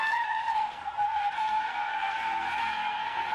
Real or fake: fake